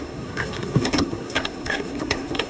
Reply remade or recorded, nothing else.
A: remade